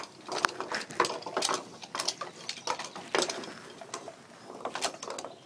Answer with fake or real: real